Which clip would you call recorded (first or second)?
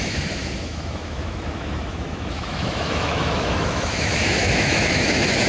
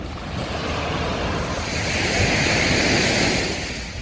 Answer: second